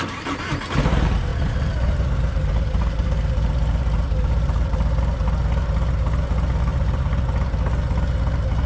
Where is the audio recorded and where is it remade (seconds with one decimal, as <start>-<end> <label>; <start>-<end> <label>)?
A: 0.0-1.3 recorded; 1.3-5.0 remade; 5.0-6.7 recorded; 6.7-7.2 remade; 7.2-8.7 recorded